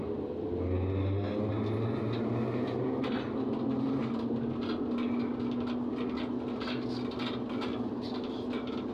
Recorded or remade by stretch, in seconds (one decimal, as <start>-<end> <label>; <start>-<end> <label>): 0.0-8.9 recorded